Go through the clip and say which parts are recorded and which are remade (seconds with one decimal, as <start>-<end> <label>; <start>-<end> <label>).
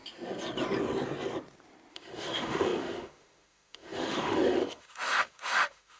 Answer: 0.0-1.9 recorded; 1.9-6.0 remade